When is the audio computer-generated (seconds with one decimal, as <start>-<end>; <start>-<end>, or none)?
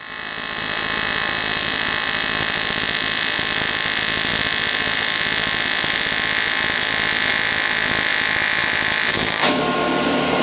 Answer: 9.1-9.6